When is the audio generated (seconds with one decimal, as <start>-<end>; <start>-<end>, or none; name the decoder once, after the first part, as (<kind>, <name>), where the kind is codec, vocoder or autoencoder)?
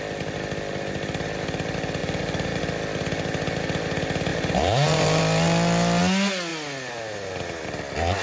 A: 2.0-2.6 (vocoder, BigVGAN v2); 4.3-5.2